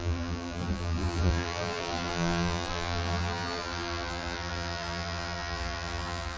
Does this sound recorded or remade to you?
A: remade